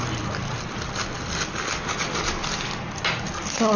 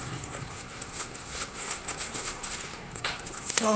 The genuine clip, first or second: first